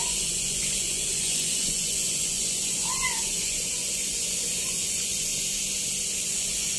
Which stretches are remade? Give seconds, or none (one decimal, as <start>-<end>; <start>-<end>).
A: 0.0-5.3; 6.2-6.8